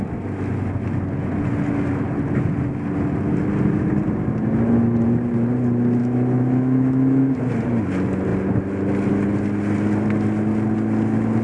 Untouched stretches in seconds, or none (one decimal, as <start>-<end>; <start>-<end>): 0.0-6.0; 7.4-11.4